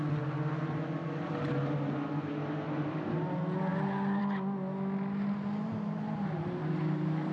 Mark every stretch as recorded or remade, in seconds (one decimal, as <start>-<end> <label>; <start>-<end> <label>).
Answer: 0.0-7.3 recorded